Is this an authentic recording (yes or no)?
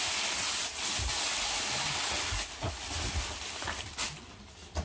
yes